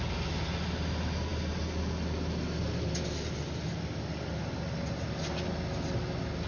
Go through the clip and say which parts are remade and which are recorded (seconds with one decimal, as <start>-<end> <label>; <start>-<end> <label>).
0.0-6.5 recorded

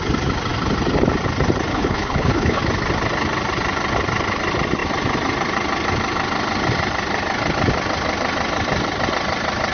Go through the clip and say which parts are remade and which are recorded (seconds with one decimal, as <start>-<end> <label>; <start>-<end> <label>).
0.0-1.7 recorded; 1.7-2.6 remade; 2.6-9.7 recorded

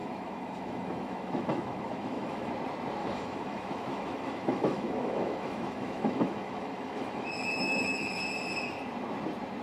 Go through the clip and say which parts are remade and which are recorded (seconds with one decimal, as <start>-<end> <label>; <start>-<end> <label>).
0.0-2.5 remade; 2.5-3.0 recorded; 3.0-8.2 remade; 8.2-9.6 recorded

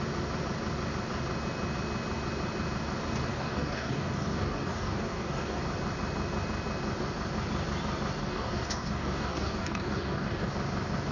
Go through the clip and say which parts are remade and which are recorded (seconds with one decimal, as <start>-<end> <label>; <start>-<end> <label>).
0.0-3.3 recorded; 3.3-5.6 remade; 5.6-8.2 recorded; 8.2-10.5 remade; 10.5-11.1 recorded

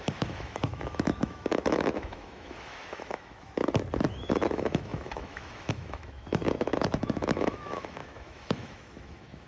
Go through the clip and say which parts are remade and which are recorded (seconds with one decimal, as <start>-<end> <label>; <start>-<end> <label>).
0.0-3.6 remade; 3.6-4.1 recorded; 4.1-9.5 remade

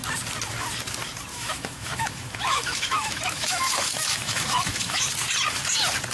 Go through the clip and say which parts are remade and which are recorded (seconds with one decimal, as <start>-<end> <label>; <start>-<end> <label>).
0.0-1.3 recorded; 1.3-5.0 remade; 5.0-6.1 recorded

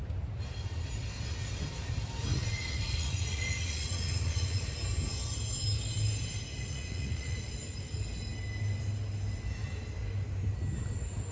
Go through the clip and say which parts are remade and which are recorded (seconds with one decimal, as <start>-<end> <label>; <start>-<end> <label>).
0.0-2.3 recorded; 2.3-4.7 remade; 4.7-6.5 recorded; 6.5-7.5 remade; 7.5-11.3 recorded